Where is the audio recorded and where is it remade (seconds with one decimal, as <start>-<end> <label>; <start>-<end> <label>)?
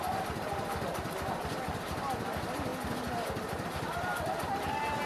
0.0-5.1 recorded